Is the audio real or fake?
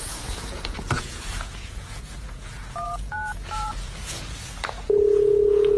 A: fake